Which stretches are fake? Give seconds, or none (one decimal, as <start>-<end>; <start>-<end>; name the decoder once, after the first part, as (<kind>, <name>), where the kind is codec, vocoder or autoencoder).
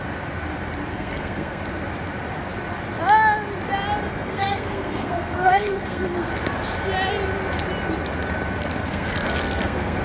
0.9-1.6 (codec, SNAC); 4.1-6.3; 8.8-10.0